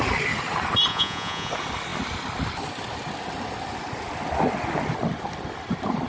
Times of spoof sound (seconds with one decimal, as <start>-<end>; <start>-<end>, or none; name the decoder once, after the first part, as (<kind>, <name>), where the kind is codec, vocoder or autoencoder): 0.9-1.5 (vocoder, Vocos)